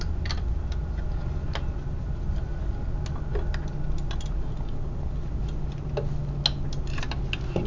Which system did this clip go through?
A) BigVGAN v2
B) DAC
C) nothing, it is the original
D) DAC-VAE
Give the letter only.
C